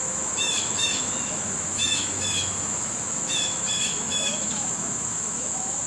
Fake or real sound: fake